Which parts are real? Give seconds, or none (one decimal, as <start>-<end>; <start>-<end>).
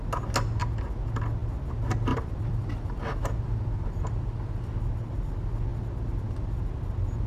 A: 0.0-2.1; 4.7-7.3